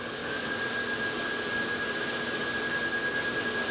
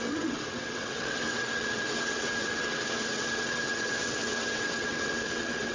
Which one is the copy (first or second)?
second